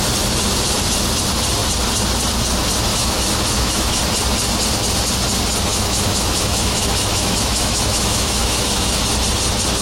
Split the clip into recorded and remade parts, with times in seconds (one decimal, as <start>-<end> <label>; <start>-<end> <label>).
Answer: 0.0-2.9 recorded; 2.9-4.0 remade; 4.0-5.7 recorded; 5.7-9.0 remade; 9.0-9.8 recorded